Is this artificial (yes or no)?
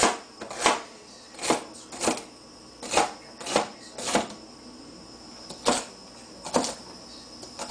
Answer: no